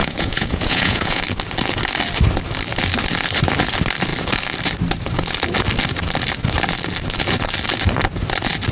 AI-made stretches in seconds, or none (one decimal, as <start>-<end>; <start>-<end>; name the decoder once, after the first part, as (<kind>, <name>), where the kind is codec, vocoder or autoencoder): 0.0-1.2 (vocoder, Vocos)